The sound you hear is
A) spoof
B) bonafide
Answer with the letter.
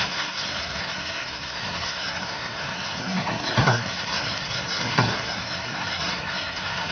A